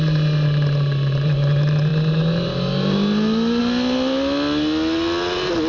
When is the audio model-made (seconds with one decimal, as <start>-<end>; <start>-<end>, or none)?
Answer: none